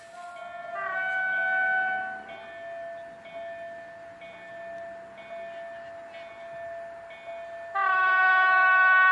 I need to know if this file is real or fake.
real